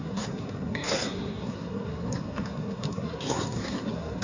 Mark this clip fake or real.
fake